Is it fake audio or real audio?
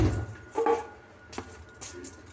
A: real